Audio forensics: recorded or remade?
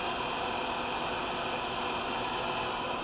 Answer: recorded